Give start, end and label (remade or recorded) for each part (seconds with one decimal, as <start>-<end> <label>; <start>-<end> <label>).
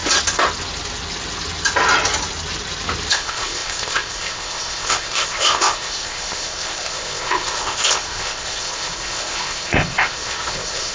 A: 0.0-3.1 recorded; 3.1-10.9 remade